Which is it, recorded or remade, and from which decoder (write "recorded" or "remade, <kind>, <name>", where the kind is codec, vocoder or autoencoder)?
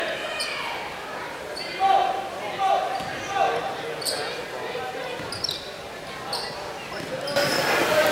remade, vocoder, BigVGAN v2